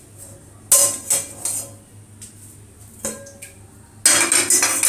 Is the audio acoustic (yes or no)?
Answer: yes